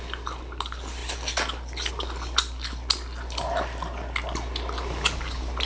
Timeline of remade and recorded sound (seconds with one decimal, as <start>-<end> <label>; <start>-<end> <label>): 0.0-5.7 recorded